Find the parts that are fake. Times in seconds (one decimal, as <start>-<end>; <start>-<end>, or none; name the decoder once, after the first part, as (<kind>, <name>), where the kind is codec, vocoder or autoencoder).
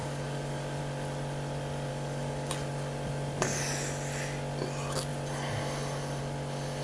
0.0-0.8 (codec, DAC); 1.9-2.5